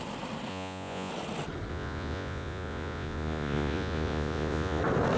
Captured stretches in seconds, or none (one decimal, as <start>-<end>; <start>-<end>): 0.0-0.5; 1.1-1.7; 4.8-5.2